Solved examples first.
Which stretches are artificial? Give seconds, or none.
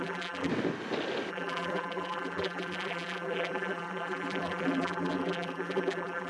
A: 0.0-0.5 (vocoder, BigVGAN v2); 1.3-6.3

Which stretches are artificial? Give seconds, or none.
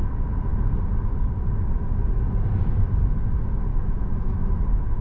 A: 3.7-4.6 (autoencoder, DAC-VAE)